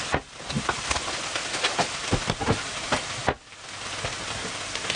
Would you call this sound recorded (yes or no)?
yes